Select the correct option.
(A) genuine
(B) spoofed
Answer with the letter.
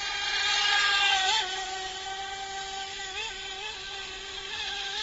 A